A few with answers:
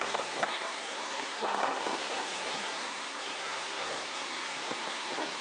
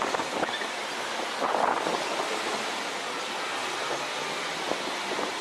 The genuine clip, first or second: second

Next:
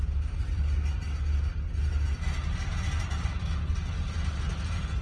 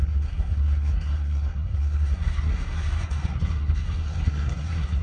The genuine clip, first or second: first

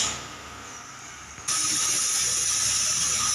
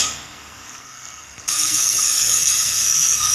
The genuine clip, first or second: first